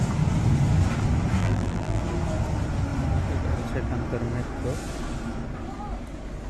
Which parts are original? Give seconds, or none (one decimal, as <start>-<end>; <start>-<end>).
0.0-1.4; 2.0-6.5